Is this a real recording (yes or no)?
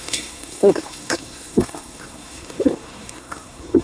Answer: no